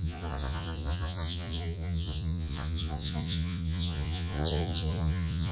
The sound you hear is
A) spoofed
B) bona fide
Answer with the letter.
A